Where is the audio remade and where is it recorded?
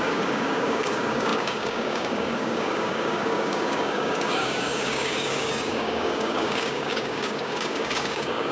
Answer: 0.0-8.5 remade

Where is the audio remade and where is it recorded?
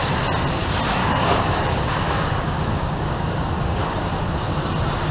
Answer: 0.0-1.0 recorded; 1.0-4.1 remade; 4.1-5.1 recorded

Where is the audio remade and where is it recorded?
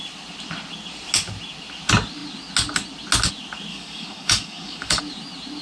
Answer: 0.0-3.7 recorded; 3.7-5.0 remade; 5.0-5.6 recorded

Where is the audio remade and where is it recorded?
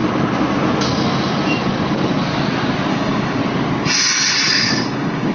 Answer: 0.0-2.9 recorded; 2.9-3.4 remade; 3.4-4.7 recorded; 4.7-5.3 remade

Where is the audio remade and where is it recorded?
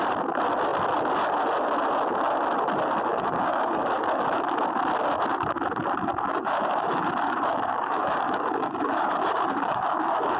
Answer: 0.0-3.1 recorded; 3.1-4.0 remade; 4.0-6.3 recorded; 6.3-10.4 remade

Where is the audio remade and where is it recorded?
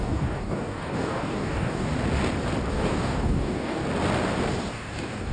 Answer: 0.0-1.9 remade; 1.9-2.7 recorded; 2.7-3.8 remade; 3.8-4.7 recorded; 4.7-5.3 remade